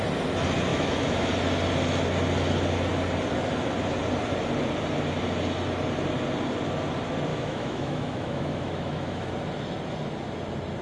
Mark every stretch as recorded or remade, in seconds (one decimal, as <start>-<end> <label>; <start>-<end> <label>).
0.0-0.7 recorded; 0.7-1.3 remade; 1.3-7.3 recorded; 7.3-9.3 remade; 9.3-10.8 recorded